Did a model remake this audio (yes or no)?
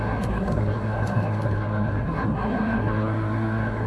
yes